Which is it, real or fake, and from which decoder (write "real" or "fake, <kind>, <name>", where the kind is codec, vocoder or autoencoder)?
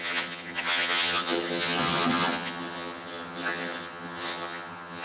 fake, vocoder, HiFi-GAN